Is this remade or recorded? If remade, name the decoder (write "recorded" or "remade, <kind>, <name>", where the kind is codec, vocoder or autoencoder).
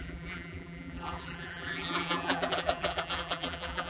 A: remade, vocoder, BigVGAN v2